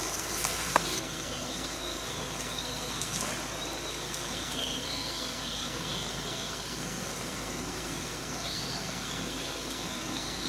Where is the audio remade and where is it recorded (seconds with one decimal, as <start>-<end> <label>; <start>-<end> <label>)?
0.0-3.3 remade; 3.3-3.9 recorded; 3.9-10.5 remade